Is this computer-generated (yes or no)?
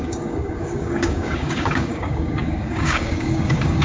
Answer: yes